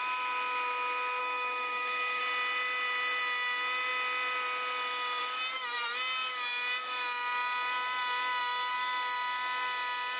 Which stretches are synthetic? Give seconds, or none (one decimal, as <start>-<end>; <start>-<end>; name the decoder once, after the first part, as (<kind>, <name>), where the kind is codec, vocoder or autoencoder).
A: 1.2-2.2 (autoencoder, DAC-VAE)